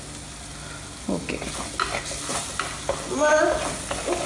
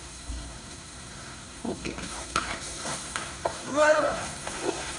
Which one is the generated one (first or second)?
second